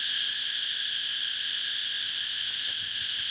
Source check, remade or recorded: remade